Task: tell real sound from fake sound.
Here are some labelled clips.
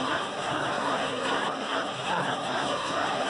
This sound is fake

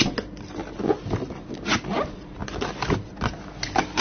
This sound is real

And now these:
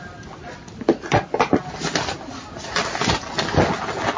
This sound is real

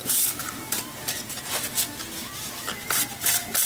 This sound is real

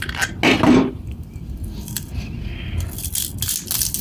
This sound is real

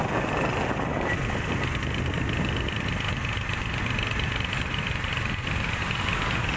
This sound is real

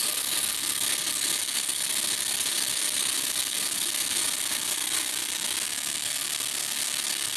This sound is fake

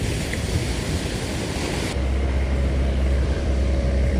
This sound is fake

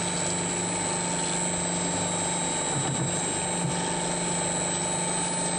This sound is real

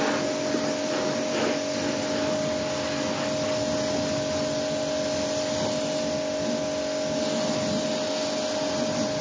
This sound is real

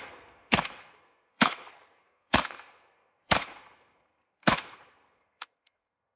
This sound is fake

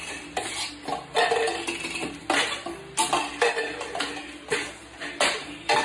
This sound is real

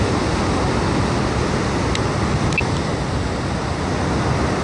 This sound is real